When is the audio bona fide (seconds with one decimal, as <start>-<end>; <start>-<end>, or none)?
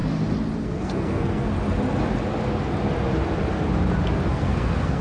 0.0-0.6; 1.5-4.3